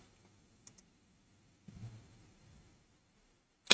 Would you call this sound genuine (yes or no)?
yes